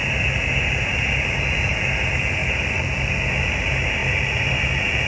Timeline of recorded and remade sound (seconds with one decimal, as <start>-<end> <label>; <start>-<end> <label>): 0.0-2.4 recorded; 2.4-3.3 remade; 3.3-5.1 recorded